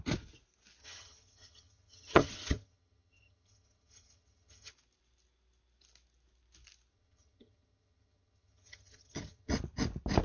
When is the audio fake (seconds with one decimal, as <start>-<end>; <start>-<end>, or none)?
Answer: 0.8-4.7; 6.9-9.6